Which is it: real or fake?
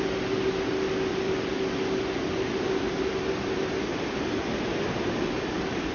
real